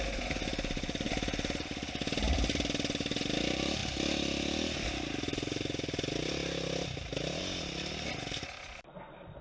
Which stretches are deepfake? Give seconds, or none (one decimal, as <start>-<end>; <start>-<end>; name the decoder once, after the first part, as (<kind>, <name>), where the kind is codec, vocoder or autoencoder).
none